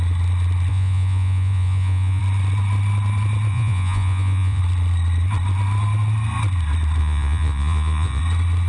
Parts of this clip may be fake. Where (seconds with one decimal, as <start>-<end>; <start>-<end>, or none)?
0.7-2.2; 3.5-4.6; 7.0-8.2